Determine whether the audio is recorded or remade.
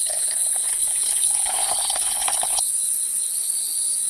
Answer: remade